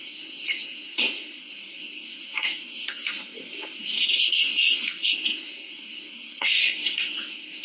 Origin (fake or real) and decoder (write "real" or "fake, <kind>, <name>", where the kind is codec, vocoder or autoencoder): fake, codec, SNAC